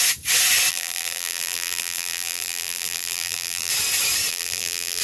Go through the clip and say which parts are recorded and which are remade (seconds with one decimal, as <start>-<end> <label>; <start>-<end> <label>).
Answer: 0.0-0.7 recorded; 0.7-3.7 remade; 3.7-4.3 recorded; 4.3-5.0 remade